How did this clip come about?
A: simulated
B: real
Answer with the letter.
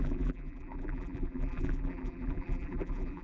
A